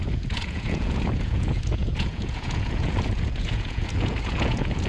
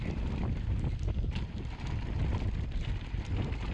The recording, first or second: second